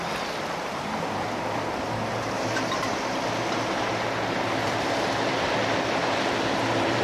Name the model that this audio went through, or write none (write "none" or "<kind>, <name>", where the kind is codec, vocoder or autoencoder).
none